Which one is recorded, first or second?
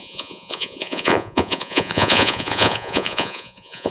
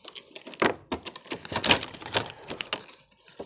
second